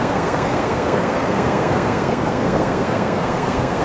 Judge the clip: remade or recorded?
remade